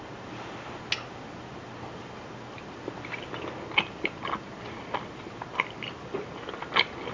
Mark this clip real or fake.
real